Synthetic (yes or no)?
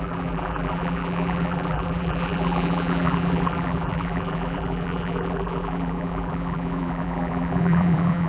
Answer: yes